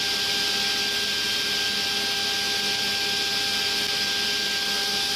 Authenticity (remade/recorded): recorded